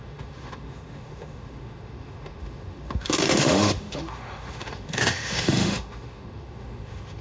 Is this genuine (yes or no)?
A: no